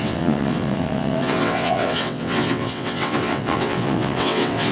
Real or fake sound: fake